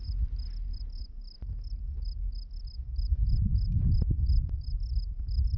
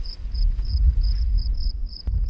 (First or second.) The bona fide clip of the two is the first